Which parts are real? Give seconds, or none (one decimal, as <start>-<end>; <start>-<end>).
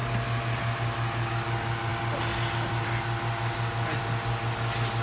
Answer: 0.0-5.0